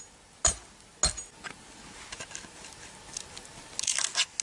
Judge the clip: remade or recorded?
recorded